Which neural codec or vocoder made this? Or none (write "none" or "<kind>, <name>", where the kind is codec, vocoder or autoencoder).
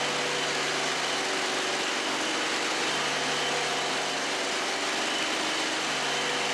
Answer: none